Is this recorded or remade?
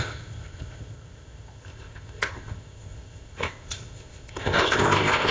remade